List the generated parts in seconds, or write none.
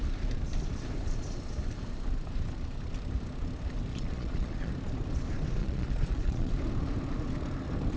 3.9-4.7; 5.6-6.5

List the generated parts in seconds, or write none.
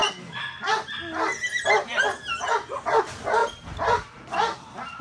none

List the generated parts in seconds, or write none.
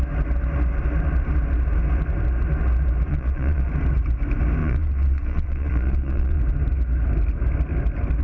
3.1-3.7; 4.6-6.4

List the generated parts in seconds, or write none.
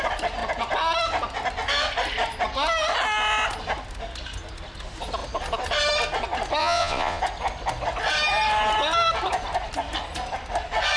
6.6-7.2